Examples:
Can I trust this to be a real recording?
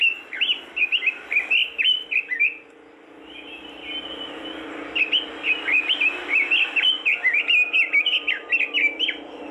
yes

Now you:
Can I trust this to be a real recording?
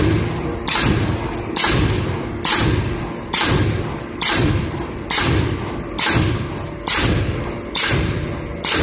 no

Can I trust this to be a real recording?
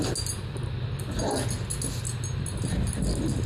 yes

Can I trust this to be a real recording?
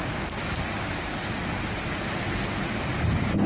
yes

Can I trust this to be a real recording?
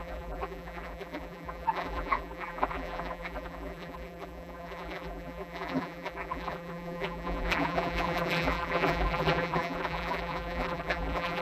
no